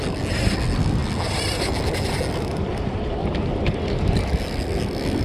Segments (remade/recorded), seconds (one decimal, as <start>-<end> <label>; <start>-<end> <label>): 0.0-5.2 recorded